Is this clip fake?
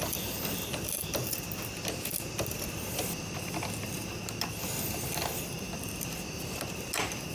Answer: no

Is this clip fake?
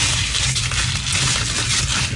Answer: no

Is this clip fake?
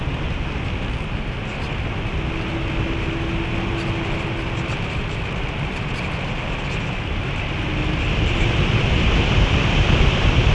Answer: no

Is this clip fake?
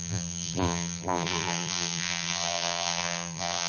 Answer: yes